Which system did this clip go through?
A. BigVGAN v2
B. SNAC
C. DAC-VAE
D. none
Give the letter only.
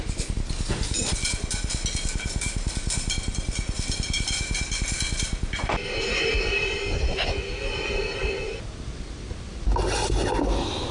D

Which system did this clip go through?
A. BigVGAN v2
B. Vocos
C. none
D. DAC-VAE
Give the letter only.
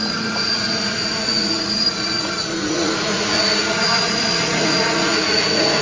B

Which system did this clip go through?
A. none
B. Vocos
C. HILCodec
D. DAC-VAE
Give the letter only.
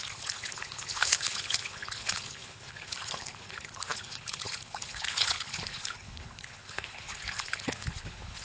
C